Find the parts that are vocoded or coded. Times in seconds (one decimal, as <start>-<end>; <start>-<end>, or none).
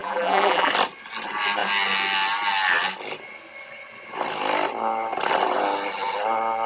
0.0-0.7